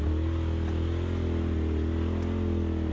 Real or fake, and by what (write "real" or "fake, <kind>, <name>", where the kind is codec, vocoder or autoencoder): real